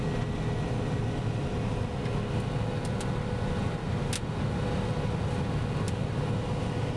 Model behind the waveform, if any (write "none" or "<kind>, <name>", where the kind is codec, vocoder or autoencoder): none